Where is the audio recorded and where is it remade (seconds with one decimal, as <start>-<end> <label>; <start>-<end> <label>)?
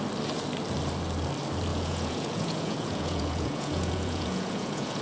0.0-1.7 recorded; 1.7-5.0 remade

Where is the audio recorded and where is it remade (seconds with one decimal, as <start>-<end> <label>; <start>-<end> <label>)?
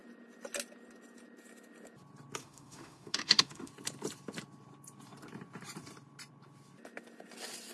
0.0-2.4 recorded; 2.4-3.7 remade; 3.7-7.7 recorded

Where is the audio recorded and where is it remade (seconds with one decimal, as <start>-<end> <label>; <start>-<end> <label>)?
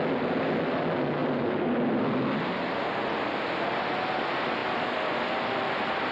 0.0-6.1 recorded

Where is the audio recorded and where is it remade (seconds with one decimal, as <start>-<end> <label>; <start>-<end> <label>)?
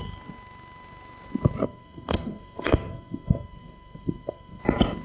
0.0-1.6 recorded; 1.6-4.6 remade; 4.6-5.0 recorded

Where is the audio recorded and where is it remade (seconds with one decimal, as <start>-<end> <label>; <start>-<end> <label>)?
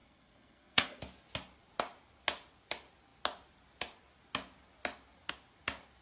0.0-1.0 remade; 1.0-6.0 recorded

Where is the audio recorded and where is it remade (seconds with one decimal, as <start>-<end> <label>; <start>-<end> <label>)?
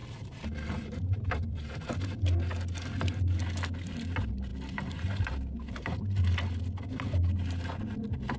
0.0-2.2 remade; 2.2-8.4 recorded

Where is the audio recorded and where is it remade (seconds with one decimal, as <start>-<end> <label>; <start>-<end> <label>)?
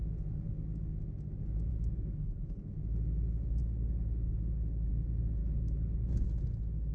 0.0-1.7 recorded; 1.7-2.7 remade; 2.7-3.6 recorded; 3.6-4.9 remade; 4.9-5.4 recorded; 5.4-6.1 remade; 6.1-6.9 recorded